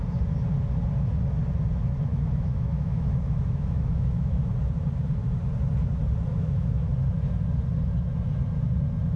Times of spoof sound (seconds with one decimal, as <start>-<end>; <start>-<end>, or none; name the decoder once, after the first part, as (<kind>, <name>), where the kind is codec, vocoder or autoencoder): 2.1-4.5 (autoencoder, DAC-VAE); 6.3-6.9